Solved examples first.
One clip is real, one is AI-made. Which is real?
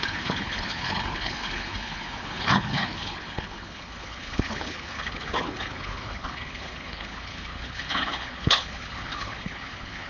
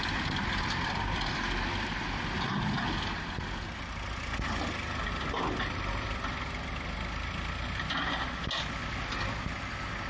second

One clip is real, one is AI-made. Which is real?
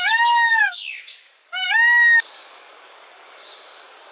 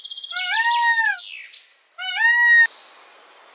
second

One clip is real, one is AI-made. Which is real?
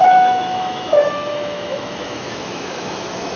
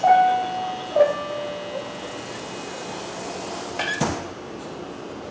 second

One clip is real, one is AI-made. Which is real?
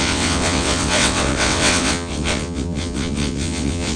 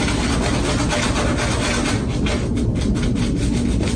second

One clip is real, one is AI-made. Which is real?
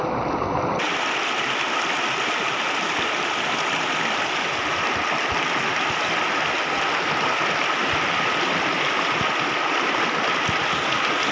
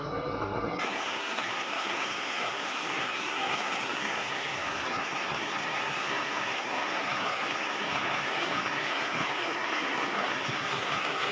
first